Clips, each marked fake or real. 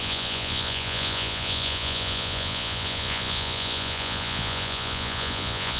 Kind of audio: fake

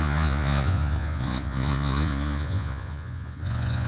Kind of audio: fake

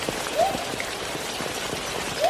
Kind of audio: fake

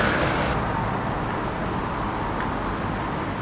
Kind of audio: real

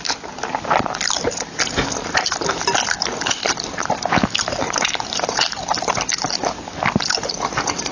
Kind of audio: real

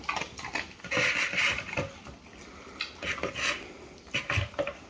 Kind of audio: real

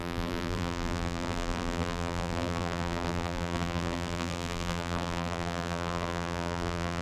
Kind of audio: fake